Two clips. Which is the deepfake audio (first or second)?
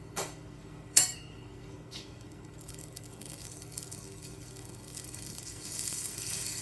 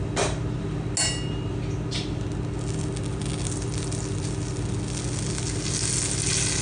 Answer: first